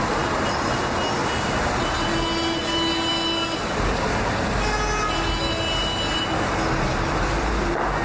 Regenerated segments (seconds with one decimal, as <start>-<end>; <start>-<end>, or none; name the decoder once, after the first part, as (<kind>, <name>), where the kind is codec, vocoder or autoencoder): none